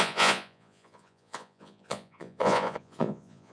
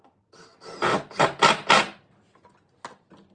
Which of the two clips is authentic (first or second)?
second